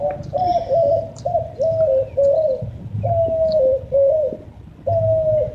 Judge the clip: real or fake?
real